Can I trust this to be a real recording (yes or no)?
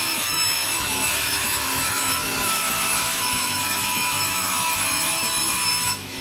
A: no